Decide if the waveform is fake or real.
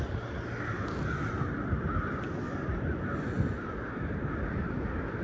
real